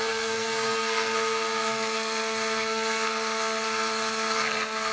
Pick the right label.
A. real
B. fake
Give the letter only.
B